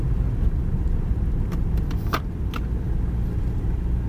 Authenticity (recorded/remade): recorded